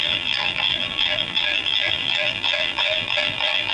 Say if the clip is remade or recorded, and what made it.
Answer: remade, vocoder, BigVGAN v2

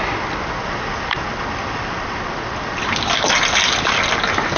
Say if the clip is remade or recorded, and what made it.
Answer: recorded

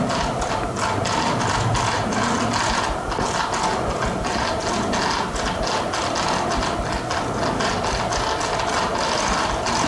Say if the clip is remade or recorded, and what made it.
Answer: recorded